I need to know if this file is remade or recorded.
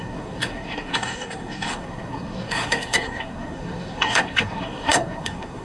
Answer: remade